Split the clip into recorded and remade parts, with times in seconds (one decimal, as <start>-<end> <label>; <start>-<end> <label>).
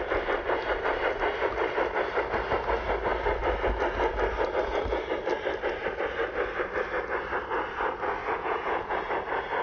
0.0-8.2 recorded; 8.2-9.1 remade; 9.1-9.6 recorded